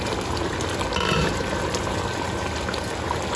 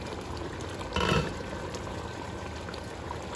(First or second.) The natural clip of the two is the first